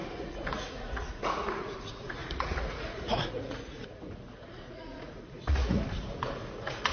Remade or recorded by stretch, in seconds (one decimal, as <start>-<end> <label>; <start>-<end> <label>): 0.0-6.9 remade